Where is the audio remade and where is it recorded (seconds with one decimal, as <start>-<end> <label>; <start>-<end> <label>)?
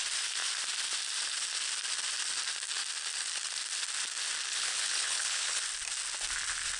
0.0-4.5 recorded; 4.5-5.6 remade; 5.6-6.8 recorded